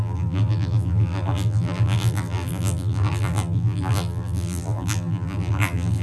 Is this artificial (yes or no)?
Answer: yes